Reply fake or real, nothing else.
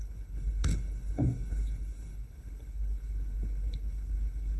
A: fake